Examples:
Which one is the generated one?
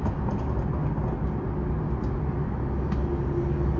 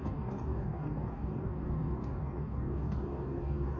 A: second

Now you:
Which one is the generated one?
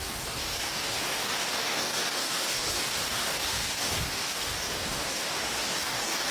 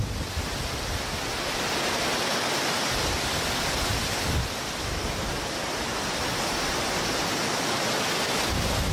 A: first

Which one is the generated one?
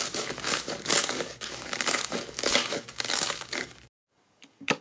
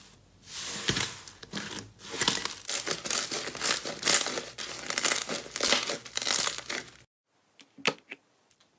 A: first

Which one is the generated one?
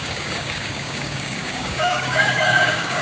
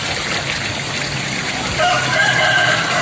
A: first